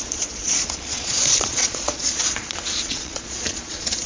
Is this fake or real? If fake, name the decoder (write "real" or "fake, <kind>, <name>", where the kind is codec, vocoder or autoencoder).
fake, vocoder, Vocos